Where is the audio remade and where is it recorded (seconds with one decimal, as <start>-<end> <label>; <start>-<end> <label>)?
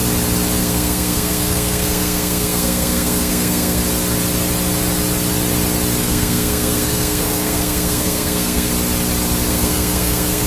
0.0-0.6 recorded; 0.6-3.8 remade; 3.8-6.0 recorded; 6.0-8.7 remade; 8.7-9.5 recorded; 9.5-10.5 remade